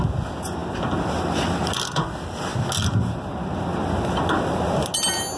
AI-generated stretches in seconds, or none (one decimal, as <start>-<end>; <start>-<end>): none